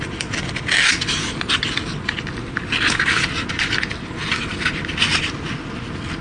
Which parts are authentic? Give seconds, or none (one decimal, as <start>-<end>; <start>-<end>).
0.0-6.2